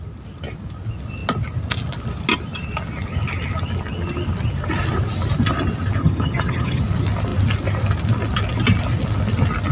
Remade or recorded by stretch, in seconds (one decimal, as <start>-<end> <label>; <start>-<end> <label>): 0.0-6.0 recorded; 6.0-6.8 remade; 6.8-9.7 recorded